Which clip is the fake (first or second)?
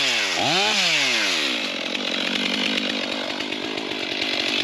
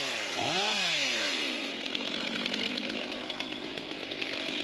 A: second